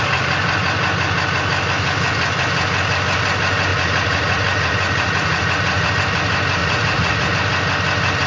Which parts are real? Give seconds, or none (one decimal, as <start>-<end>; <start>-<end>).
0.0-3.7; 5.9-6.6; 7.3-8.3